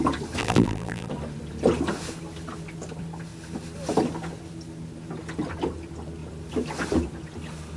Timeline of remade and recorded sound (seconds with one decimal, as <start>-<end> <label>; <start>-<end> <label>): 0.0-0.4 recorded; 0.4-1.1 remade; 1.1-7.8 recorded